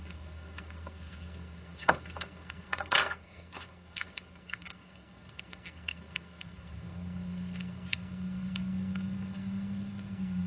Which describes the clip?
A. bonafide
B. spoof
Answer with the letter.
B